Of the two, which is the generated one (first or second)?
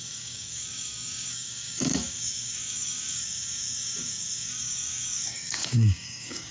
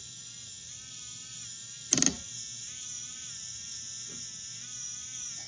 first